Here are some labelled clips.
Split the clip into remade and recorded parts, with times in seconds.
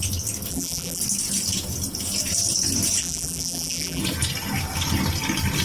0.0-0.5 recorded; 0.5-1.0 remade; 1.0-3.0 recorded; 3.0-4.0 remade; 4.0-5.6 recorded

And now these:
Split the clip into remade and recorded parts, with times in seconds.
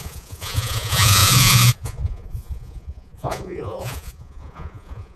0.0-5.2 remade